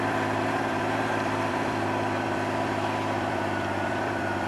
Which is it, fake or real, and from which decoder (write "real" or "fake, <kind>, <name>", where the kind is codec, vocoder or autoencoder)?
fake, vocoder, BigVGAN v2